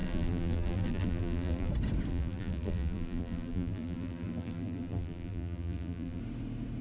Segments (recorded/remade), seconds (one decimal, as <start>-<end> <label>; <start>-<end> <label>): 0.0-1.7 remade; 1.7-2.1 recorded; 2.1-6.2 remade; 6.2-6.8 recorded